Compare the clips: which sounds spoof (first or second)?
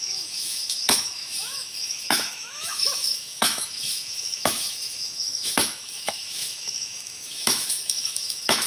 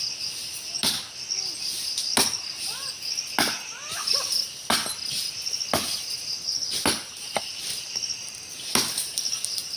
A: first